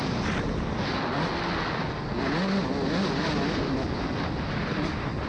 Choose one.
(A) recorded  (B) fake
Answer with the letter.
A